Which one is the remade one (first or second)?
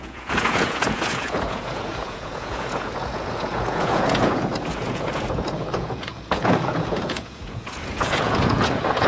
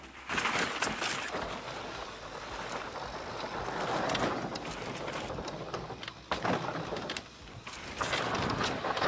first